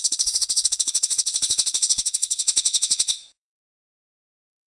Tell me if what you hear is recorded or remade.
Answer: remade